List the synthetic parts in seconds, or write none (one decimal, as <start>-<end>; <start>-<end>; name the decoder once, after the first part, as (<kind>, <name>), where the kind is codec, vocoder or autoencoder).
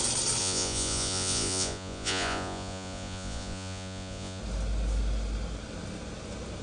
0.4-4.4 (vocoder, Vocos)